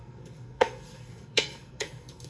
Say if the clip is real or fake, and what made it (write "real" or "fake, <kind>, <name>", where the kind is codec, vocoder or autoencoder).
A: fake, codec, SNAC